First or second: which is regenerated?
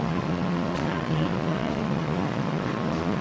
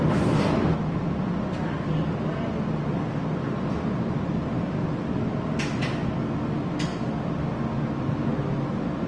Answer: first